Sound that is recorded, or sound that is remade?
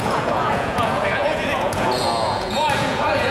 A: remade